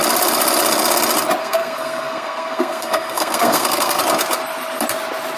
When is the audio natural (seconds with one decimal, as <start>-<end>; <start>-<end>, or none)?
0.0-1.4; 4.0-5.4